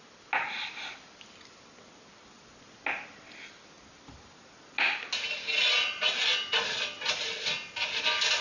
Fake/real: real